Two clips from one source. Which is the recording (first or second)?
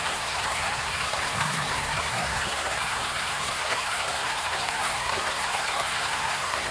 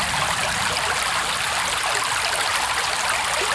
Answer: second